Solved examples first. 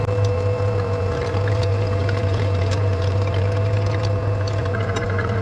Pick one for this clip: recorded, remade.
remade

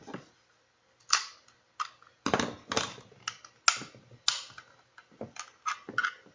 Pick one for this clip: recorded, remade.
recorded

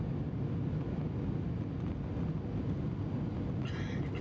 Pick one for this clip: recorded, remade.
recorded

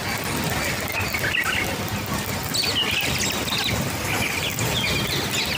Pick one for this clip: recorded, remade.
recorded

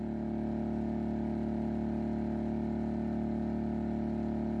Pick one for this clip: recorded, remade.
recorded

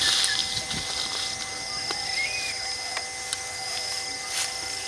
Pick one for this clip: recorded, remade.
recorded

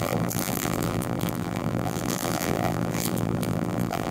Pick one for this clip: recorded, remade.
remade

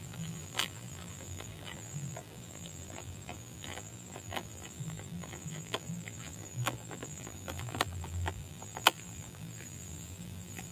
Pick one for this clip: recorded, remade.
remade